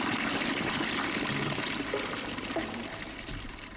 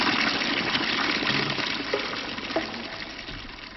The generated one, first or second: first